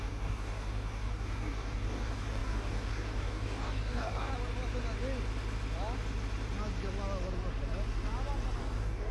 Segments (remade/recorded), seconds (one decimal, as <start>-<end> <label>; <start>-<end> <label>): 0.0-4.3 remade; 4.3-8.6 recorded; 8.6-9.1 remade